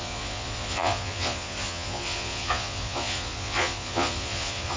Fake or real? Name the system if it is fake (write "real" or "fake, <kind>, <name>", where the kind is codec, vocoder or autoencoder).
fake, vocoder, Vocos